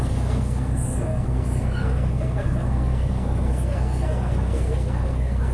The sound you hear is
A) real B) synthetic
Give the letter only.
B